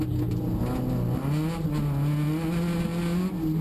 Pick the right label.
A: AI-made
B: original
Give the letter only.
B